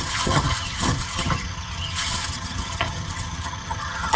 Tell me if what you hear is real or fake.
fake